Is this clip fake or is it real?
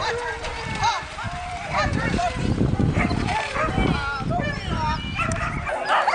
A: fake